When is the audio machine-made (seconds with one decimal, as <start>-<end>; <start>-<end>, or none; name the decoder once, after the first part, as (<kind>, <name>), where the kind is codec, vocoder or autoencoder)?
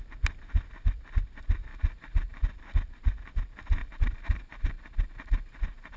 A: 1.7-2.4 (vocoder, BigVGAN v2); 3.8-5.6